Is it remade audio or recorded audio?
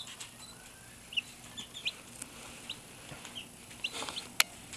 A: recorded